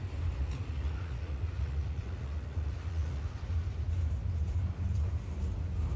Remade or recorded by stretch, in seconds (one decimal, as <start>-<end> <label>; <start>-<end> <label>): 0.0-0.4 recorded; 0.4-3.4 remade; 3.4-6.0 recorded